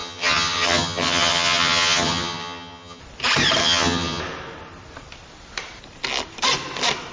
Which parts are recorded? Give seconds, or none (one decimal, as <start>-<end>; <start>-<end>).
3.0-3.6; 4.2-7.1